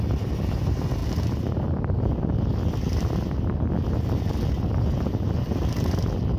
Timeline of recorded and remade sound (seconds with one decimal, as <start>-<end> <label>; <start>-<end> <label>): 0.0-6.4 recorded